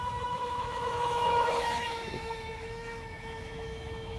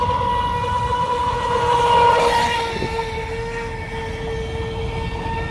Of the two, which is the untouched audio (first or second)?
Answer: second